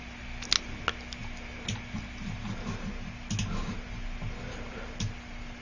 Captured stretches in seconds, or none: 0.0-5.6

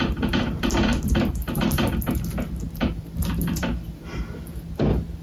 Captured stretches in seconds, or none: 0.0-0.9; 4.0-5.2

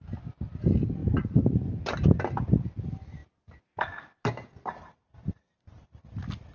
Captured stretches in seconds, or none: 0.0-6.5

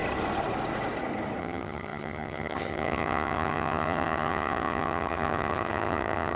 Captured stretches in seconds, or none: 0.0-1.4

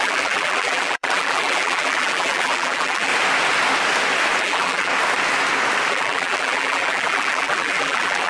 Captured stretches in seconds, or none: 3.1-4.4; 4.9-5.9

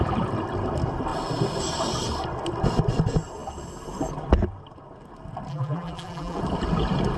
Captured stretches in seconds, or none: 0.0-5.5; 6.4-7.2